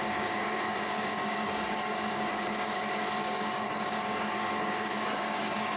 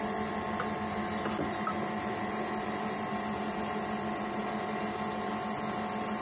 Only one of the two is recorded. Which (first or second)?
second